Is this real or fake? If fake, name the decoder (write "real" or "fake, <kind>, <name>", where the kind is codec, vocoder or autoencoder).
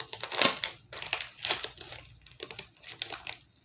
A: real